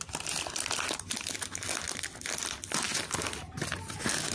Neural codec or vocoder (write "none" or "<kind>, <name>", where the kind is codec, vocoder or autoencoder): none